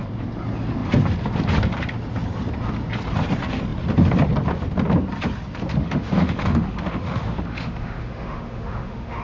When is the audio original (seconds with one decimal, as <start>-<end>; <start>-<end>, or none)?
0.0-5.8